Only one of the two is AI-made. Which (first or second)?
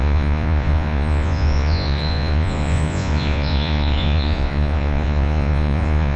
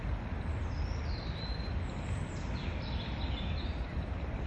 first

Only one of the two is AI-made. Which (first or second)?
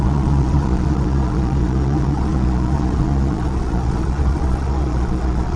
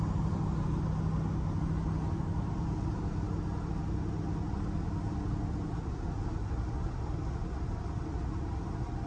first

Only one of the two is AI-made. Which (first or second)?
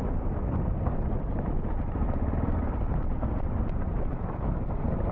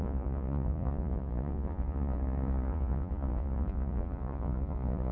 second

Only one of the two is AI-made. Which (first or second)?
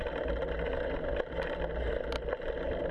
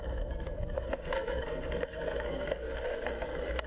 second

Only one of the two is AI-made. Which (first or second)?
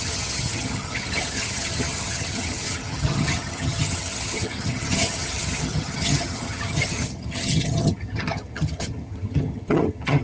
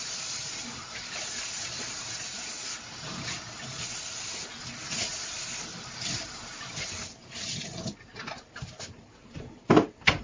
first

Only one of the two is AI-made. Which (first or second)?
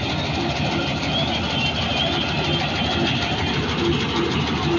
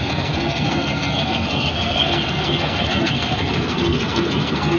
second